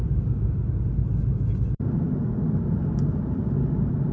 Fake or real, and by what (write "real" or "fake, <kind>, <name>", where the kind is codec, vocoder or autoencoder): real